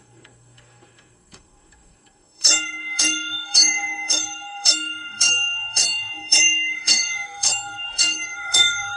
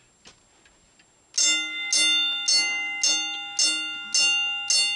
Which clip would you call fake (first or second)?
first